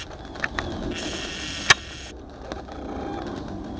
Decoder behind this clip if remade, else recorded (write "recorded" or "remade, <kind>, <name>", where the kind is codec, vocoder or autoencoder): recorded